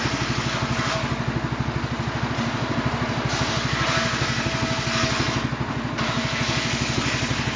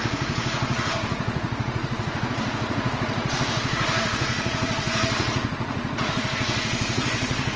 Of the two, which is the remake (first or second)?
second